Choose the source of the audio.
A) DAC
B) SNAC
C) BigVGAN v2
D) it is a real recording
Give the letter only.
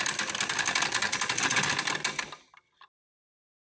D